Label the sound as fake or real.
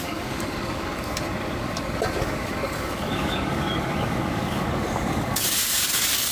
fake